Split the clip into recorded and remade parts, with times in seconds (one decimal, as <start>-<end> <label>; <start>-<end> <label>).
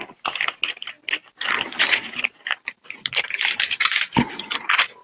0.0-1.8 recorded; 1.8-5.0 remade